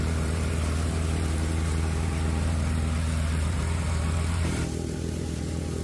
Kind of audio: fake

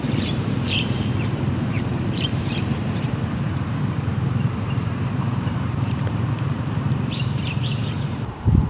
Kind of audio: fake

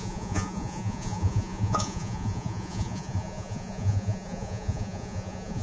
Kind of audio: fake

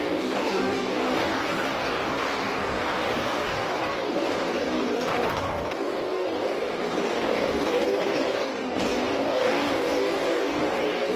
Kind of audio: fake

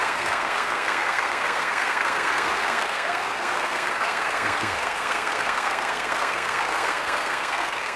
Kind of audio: fake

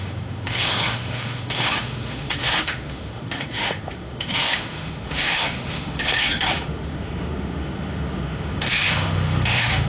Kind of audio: fake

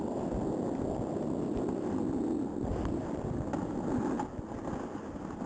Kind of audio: real